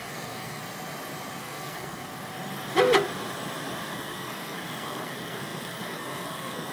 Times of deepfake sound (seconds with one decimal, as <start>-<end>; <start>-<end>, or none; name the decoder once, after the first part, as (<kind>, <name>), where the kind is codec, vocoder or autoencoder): 0.0-0.6 (codec, SNAC); 1.4-2.1; 3.9-6.7